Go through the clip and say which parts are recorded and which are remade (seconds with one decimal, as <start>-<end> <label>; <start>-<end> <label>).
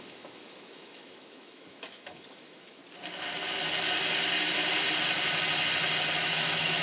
0.0-2.8 remade; 2.8-6.2 recorded; 6.2-6.8 remade